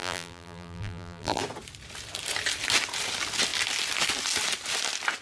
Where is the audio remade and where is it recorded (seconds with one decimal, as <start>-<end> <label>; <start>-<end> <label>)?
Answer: 0.0-1.4 remade; 1.4-5.2 recorded